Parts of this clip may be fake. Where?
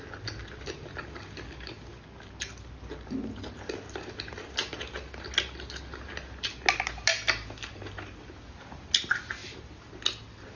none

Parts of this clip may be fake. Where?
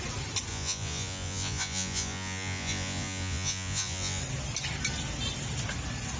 0.5-4.2 (vocoder, Vocos)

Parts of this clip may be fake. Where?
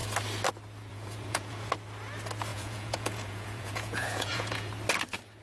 0.9-1.7 (vocoder, Vocos); 2.5-4.7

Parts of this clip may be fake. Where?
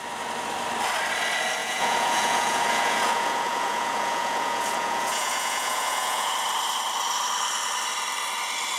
1.6-6.3 (vocoder, Vocos)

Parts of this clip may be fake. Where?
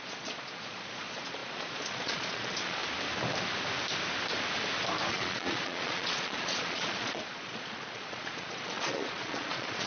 0.0-2.8 (vocoder, Vocos); 5.1-9.9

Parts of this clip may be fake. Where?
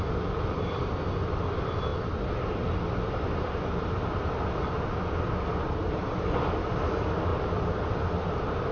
none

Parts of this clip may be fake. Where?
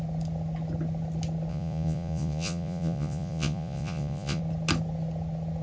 1.5-4.4 (vocoder, Vocos)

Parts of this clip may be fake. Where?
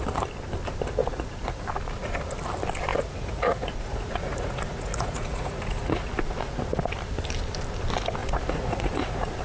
1.0-1.6 (vocoder, Vocos); 2.9-6.1; 8.2-9.4